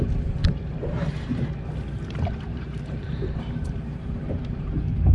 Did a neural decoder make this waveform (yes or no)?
yes